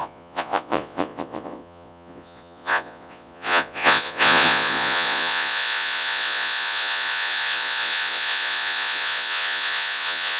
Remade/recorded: remade